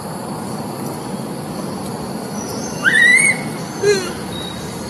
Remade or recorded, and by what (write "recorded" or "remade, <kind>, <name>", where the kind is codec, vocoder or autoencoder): recorded